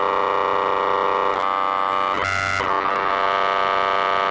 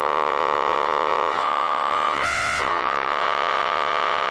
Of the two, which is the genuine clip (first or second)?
first